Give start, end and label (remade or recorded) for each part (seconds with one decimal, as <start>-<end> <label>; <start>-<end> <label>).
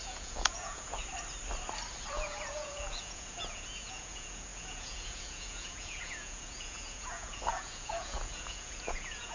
0.0-1.0 remade; 1.0-2.1 recorded; 2.1-9.3 remade